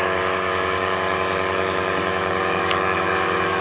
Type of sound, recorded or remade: remade